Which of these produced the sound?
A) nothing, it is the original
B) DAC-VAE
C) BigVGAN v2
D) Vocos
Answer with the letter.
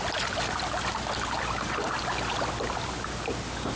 A